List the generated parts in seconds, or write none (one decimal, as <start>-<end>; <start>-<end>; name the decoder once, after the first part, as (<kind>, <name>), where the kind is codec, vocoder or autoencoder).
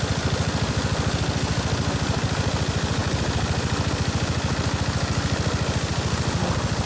none